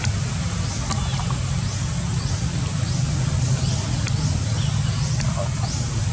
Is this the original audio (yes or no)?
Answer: yes